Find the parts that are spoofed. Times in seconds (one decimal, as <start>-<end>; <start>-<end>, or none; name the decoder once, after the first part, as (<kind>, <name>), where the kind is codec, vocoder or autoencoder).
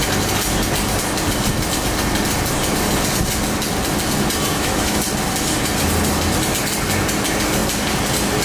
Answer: 4.5-5.0 (autoencoder, DAC-VAE)